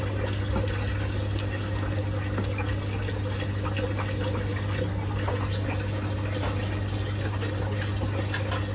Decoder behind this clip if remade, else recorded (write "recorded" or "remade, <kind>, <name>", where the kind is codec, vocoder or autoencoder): recorded